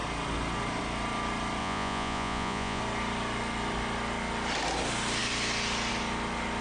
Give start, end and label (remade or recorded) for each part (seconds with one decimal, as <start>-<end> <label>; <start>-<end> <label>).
0.0-1.6 recorded; 1.6-2.8 remade; 2.8-6.6 recorded